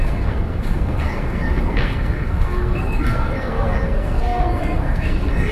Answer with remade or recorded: remade